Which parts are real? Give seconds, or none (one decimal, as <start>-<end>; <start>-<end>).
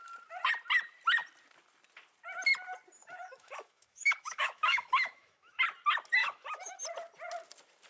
0.0-3.0; 5.6-6.2; 6.8-7.9